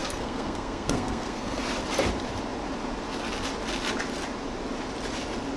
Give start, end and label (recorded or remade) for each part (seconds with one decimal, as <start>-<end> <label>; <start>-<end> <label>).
0.0-1.6 remade; 1.6-5.6 recorded